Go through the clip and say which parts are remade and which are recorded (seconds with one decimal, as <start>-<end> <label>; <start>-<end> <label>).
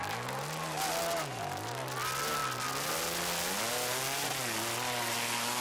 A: 0.0-5.6 recorded